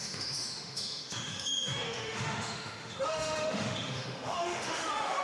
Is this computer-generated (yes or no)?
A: yes